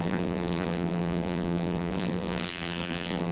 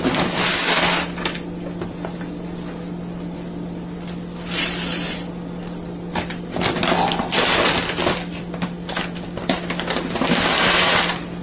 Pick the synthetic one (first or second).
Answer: first